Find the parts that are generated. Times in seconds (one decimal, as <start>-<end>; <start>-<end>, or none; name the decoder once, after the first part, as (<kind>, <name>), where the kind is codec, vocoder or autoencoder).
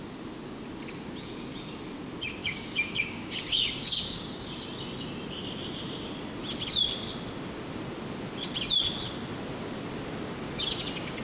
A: 2.4-4.4 (codec, DAC)